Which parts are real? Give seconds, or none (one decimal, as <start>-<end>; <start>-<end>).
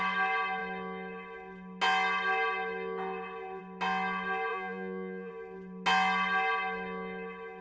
0.0-4.5; 5.3-7.6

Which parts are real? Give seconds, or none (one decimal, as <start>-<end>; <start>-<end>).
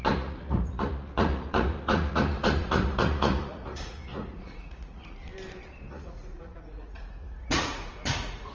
5.3-5.9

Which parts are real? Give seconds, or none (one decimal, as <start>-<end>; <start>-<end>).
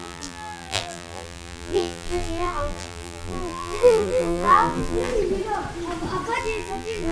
5.1-6.4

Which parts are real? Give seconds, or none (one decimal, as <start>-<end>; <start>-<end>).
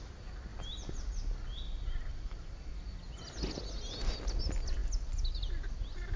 0.0-6.2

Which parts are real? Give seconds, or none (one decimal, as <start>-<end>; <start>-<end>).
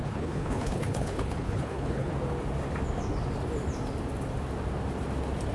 2.1-5.5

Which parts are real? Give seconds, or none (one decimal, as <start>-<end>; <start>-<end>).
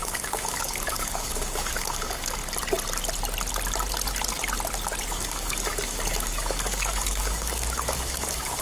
2.4-5.1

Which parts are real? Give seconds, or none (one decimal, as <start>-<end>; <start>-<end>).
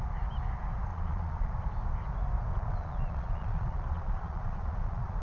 0.0-0.9; 1.5-2.5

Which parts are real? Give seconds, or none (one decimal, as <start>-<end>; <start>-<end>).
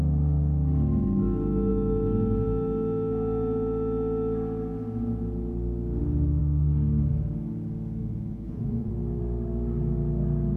0.0-8.0; 8.9-10.6